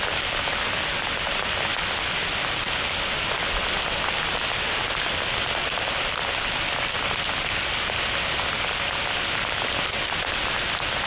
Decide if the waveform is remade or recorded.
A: recorded